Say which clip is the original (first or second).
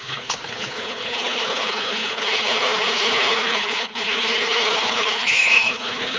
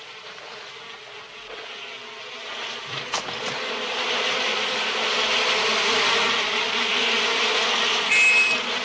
second